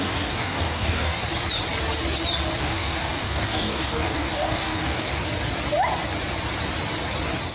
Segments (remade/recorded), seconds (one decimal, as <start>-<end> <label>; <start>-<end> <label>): 0.0-1.2 remade; 1.2-2.6 recorded; 2.6-5.1 remade; 5.1-7.5 recorded